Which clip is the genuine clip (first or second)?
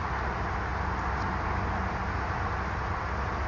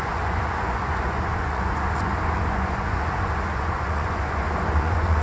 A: first